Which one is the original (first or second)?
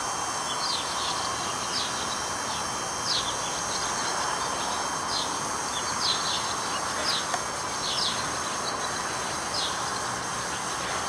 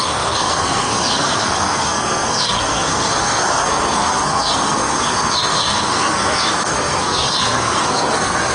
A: first